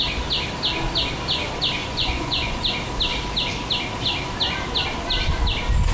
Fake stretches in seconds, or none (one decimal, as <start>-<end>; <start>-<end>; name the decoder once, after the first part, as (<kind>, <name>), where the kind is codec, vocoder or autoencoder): 1.8-2.6 (vocoder, Vocos)